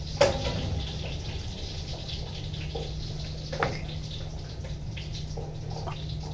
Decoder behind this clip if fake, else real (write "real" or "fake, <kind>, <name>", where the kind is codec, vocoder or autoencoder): real